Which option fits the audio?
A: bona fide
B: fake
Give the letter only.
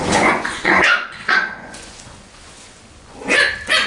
B